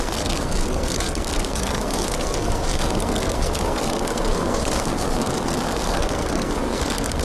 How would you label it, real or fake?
fake